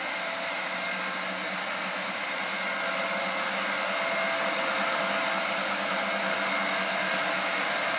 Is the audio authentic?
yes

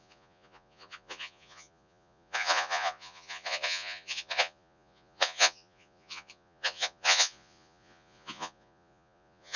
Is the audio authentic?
no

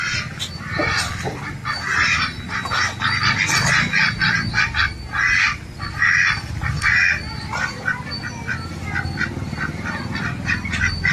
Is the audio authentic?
yes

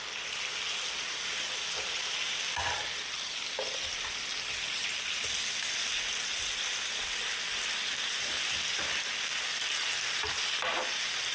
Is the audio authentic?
yes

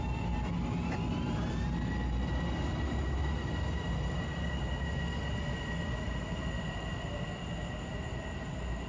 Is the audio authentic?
yes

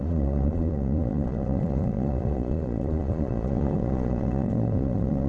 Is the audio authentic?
no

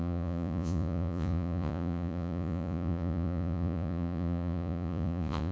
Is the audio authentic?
no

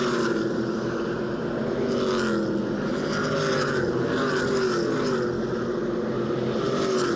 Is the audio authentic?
yes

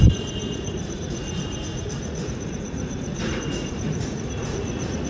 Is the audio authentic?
no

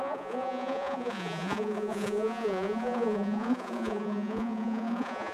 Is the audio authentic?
no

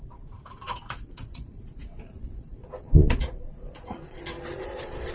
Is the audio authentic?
no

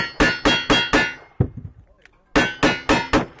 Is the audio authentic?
yes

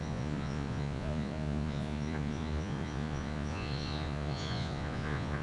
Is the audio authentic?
no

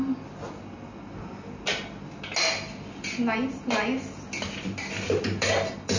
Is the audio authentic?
yes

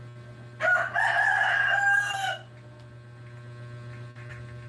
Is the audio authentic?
yes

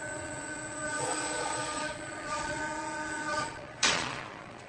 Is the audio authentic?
no